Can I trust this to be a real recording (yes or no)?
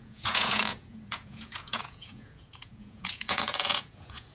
no